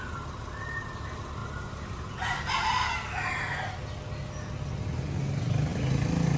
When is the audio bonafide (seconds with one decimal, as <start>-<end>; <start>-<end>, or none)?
0.0-6.4

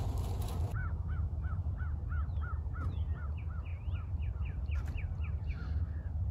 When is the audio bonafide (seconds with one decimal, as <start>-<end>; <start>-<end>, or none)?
0.0-0.8; 1.7-6.3

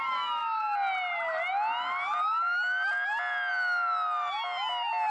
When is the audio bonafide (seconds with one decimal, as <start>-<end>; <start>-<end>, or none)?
0.0-5.1

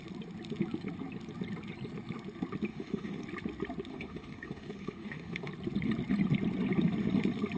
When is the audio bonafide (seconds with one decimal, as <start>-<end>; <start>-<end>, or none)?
0.0-2.7; 3.2-3.9; 5.5-7.6

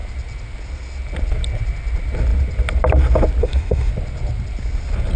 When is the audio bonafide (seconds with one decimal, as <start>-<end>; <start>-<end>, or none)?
0.0-3.4; 3.9-5.2

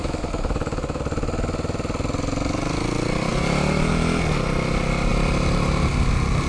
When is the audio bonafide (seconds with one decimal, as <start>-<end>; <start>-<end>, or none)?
1.0-6.5

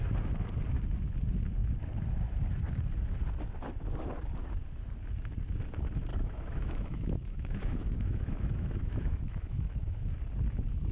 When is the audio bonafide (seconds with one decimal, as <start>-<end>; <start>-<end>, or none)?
0.0-6.1; 10.1-10.9

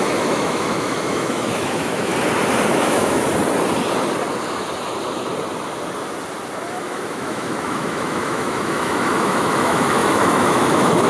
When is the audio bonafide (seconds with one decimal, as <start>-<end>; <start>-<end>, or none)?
2.1-2.7; 3.2-6.7